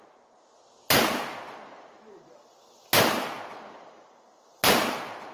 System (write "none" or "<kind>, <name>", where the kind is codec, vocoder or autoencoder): none